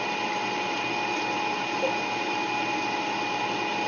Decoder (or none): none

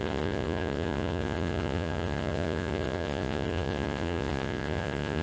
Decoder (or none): vocoder, Vocos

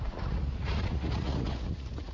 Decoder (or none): vocoder, Vocos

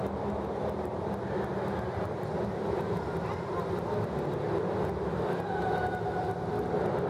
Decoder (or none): none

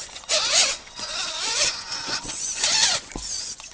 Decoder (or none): vocoder, Vocos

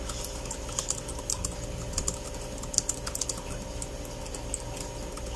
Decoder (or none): none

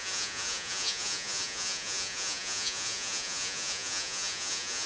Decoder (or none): vocoder, Vocos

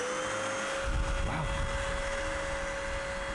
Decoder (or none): none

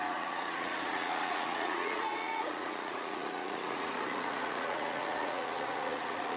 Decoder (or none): vocoder, Vocos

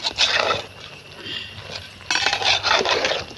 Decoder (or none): none